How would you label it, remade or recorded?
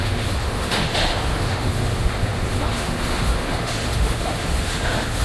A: remade